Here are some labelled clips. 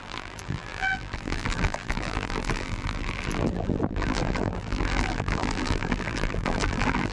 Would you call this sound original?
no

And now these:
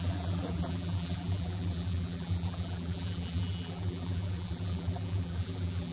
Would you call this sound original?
no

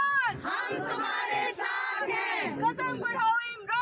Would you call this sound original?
yes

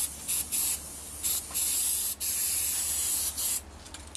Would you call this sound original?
yes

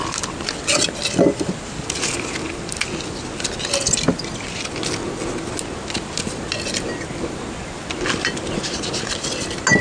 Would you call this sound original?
yes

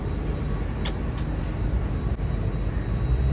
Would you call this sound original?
yes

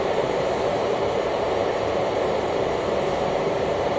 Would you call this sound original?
no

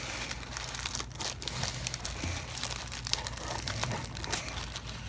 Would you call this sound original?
yes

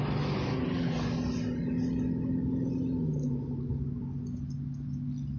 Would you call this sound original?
yes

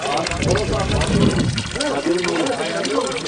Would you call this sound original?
no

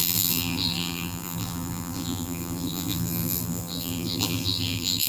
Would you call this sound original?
no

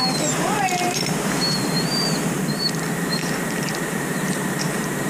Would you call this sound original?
no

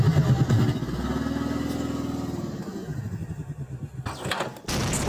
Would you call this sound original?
yes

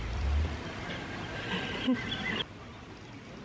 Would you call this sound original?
no